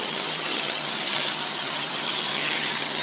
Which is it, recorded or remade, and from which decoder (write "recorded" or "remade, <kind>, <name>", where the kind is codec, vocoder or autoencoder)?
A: remade, vocoder, HiFi-GAN